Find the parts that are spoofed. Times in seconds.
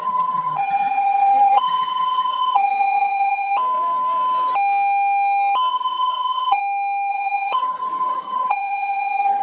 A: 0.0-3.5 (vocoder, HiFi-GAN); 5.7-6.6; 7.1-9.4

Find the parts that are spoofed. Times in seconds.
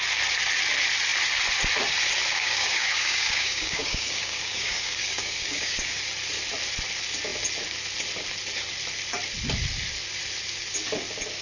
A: 2.3-6.0 (codec, DAC)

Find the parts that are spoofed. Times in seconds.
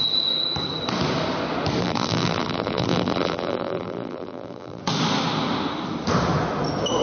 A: 1.8-4.8 (vocoder, BigVGAN v2)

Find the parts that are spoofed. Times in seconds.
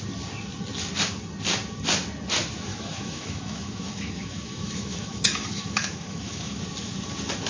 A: 2.7-6.6 (autoencoder, DAC-VAE)